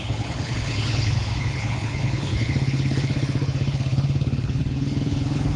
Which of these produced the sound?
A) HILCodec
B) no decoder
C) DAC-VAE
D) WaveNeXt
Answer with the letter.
A